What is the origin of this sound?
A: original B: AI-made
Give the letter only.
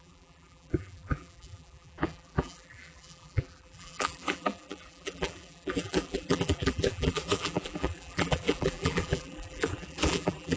B